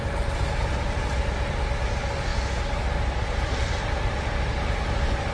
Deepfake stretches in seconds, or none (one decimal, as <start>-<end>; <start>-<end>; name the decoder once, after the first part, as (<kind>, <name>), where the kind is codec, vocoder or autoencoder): 0.0-2.3 (vocoder, BigVGAN v2); 3.6-5.3